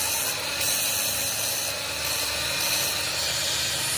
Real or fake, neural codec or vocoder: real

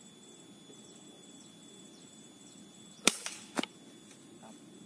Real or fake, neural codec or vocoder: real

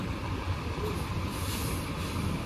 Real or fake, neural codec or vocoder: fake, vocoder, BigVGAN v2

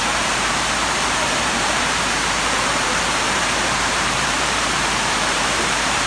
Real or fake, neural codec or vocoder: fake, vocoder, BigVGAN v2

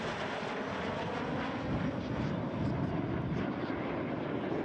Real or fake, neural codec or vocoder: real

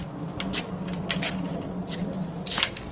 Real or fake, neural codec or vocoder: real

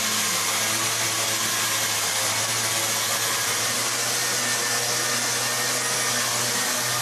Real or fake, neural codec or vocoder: real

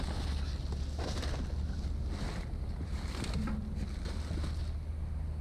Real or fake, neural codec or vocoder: real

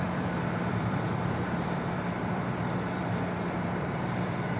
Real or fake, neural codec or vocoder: fake, vocoder, BigVGAN v2